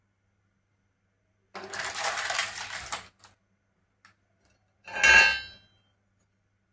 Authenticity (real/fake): real